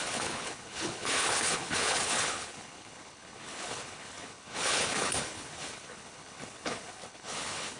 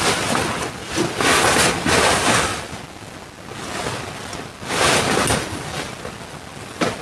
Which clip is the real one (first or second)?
second